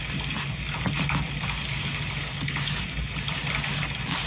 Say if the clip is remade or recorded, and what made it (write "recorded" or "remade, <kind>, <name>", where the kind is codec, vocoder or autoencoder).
recorded